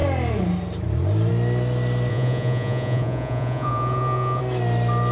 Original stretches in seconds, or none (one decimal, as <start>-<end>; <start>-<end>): 0.0-2.1; 4.4-5.1